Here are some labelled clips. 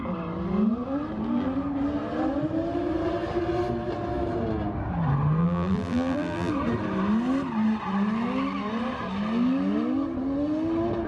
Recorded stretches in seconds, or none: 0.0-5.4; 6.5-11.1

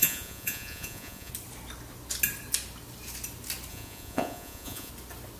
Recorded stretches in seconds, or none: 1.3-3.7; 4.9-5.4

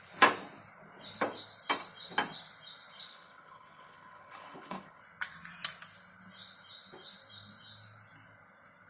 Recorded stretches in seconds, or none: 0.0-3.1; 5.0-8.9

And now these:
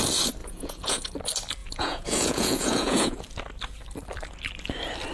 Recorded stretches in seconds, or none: 0.0-0.4; 1.1-1.6; 3.2-5.1

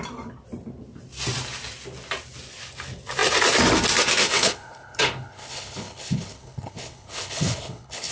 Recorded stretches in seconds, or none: 0.0-4.2

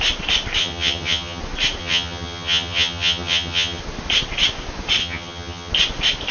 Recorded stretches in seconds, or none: 0.0-0.6; 1.4-1.8; 3.8-5.0; 5.7-6.3

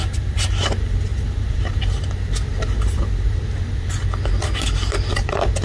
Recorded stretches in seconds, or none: 0.6-1.1; 1.8-2.5; 3.9-5.6

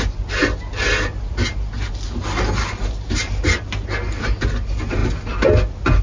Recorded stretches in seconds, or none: 0.0-6.0